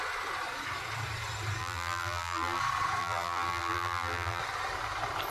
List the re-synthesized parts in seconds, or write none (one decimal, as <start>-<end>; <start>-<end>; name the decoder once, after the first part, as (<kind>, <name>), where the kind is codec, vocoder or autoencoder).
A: 1.6-2.6 (vocoder, BigVGAN v2); 3.0-4.4